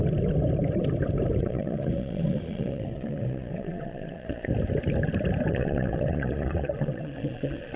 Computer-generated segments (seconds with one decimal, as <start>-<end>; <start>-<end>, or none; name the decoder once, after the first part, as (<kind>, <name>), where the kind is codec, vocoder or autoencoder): 1.4-4.5 (vocoder, Vocos); 5.5-7.8